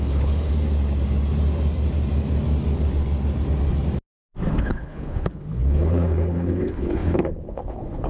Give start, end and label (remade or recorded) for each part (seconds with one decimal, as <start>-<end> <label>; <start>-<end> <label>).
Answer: 0.0-0.5 remade; 0.5-4.5 recorded; 4.5-8.1 remade